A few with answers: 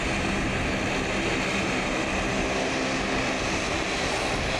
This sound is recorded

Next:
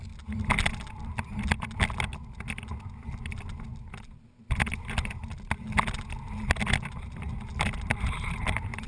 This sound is recorded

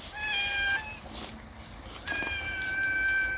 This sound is recorded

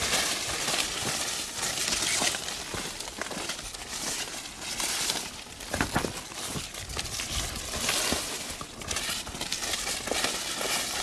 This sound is recorded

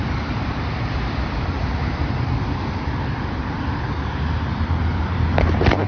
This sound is remade